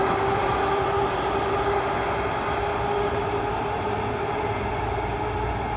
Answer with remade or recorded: recorded